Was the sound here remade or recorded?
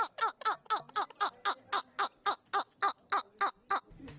recorded